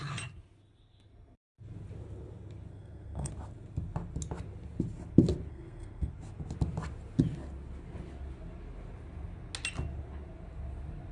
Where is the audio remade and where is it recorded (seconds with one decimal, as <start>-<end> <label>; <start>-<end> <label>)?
0.0-2.7 recorded; 2.7-3.3 remade; 3.3-5.5 recorded; 5.5-6.1 remade; 6.1-11.1 recorded